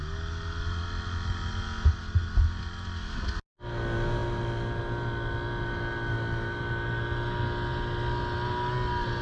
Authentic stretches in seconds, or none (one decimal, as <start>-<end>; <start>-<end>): 0.0-9.2